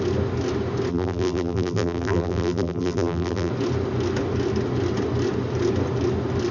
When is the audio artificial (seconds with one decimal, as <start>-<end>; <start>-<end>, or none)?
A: 0.9-3.5